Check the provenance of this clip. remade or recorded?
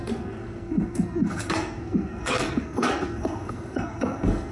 remade